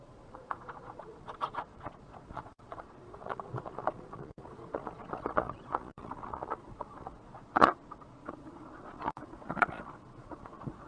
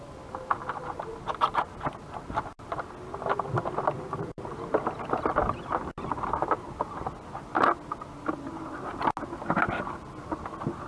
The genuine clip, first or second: second